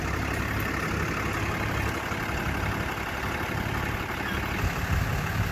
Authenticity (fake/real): real